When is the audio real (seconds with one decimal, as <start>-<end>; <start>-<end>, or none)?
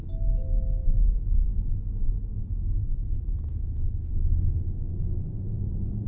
0.0-6.1